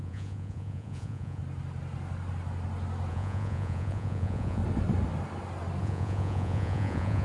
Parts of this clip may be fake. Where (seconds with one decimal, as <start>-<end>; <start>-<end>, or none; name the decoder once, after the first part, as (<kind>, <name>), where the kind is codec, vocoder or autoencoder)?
0.0-1.4 (vocoder, Vocos); 3.1-4.6; 5.8-7.2

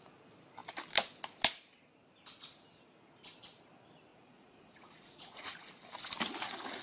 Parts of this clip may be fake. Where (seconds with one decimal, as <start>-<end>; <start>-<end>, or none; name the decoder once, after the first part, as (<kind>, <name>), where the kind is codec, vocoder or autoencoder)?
4.1-5.8 (vocoder, Vocos)

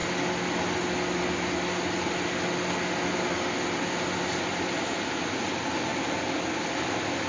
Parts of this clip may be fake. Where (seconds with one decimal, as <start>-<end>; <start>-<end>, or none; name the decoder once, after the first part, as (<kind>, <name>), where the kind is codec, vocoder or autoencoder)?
none

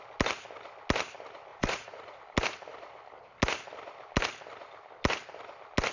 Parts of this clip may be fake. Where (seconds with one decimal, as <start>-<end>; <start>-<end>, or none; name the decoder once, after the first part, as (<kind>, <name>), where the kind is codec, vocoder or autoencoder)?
1.5-2.2 (vocoder, Vocos)

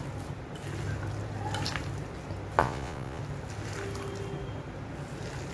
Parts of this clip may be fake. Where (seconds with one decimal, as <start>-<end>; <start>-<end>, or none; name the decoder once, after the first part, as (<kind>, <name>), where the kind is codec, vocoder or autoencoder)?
2.6-3.2 (vocoder, Vocos)

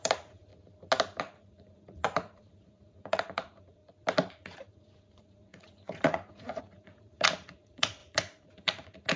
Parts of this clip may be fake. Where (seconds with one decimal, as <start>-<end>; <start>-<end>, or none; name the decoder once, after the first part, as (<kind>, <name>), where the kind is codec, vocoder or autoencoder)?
0.0-0.5 (vocoder, Vocos); 1.2-3.8; 4.3-9.2

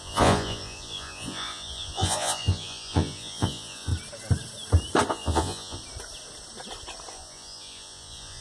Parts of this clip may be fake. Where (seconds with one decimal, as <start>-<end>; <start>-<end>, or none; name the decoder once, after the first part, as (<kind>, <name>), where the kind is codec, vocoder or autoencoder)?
0.0-3.9 (vocoder, Vocos); 5.1-5.8; 7.1-8.4

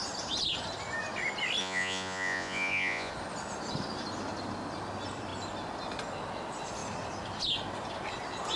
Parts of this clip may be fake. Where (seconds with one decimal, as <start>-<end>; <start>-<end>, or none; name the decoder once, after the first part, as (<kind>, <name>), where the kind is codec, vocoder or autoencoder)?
1.6-3.1 (vocoder, Vocos)